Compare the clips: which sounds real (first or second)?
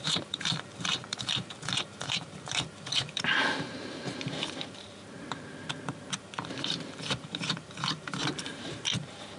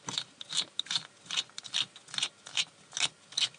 second